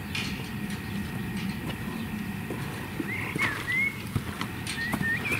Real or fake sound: real